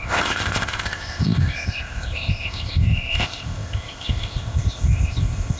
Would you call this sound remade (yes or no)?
yes